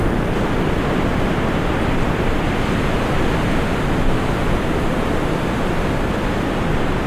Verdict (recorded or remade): recorded